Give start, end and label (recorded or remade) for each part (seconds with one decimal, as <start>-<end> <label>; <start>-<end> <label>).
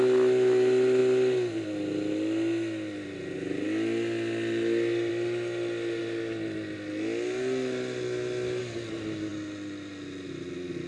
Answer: 0.0-10.9 recorded